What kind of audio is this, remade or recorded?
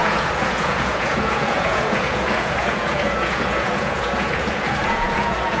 remade